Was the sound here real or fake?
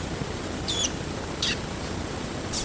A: fake